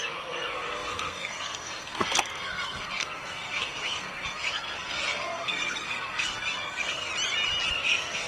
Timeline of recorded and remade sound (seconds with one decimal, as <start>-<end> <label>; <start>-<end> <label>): 0.0-7.1 remade; 7.1-7.7 recorded; 7.7-8.3 remade